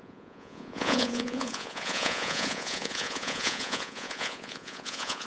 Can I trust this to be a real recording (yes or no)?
no